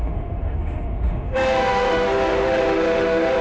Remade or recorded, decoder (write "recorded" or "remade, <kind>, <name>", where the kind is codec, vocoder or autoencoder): remade, autoencoder, DAC-VAE